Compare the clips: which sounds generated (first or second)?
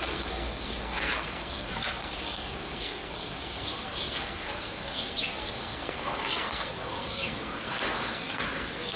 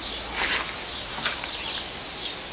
first